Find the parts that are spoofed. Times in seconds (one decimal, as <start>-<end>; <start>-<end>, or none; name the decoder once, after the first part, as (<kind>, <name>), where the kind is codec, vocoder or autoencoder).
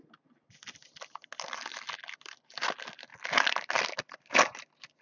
none